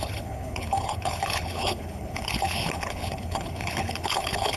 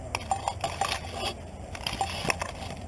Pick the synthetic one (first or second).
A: first